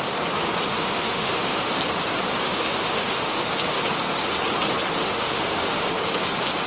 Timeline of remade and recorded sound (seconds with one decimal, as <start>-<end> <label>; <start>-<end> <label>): 0.0-0.7 recorded; 0.7-1.7 remade; 1.7-2.4 recorded; 2.4-3.4 remade; 3.4-5.0 recorded; 5.0-5.9 remade; 5.9-6.7 recorded